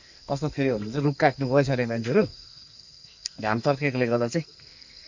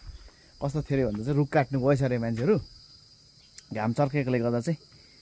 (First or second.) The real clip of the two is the second